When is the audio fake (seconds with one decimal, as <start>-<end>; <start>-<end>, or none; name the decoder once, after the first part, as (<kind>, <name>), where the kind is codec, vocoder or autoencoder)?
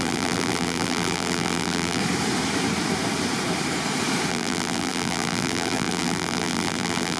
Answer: 0.0-2.0 (vocoder, BigVGAN v2); 4.3-7.2